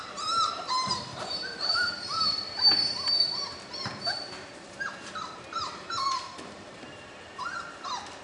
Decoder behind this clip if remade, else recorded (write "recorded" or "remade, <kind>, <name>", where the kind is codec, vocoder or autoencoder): remade, vocoder, BigVGAN v2